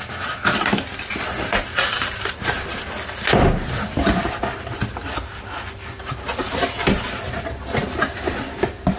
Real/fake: real